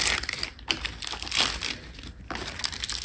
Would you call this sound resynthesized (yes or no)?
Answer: no